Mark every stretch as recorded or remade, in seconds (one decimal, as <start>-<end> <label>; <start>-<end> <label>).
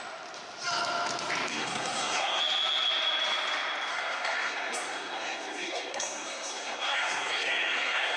0.0-1.5 recorded; 1.5-2.4 remade; 2.4-3.9 recorded; 3.9-8.2 remade